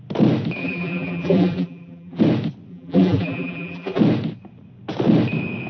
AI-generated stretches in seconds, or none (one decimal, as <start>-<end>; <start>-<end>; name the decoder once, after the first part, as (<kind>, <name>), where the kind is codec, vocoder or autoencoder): 0.6-2.2 (vocoder, BigVGAN v2); 2.7-4.0